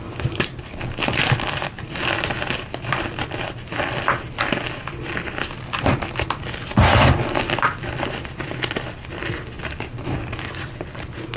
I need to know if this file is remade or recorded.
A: recorded